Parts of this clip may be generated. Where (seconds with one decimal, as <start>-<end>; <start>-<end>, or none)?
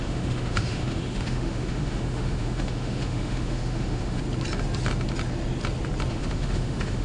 0.0-4.2; 6.1-7.0